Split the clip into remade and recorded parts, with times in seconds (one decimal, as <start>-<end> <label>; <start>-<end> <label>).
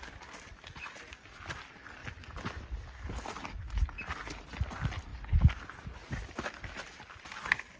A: 0.0-7.8 recorded